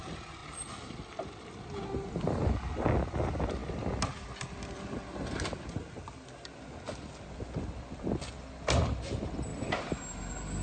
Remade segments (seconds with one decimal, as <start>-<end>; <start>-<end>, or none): none